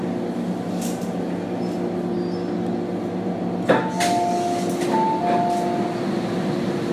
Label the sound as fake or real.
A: real